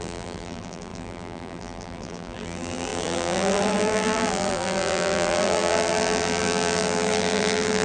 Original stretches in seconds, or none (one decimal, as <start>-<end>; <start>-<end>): none